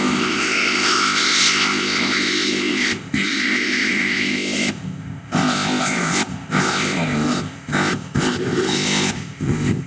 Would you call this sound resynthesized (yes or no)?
yes